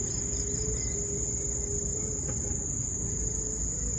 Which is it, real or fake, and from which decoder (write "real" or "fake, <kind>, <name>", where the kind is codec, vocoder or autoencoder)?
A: real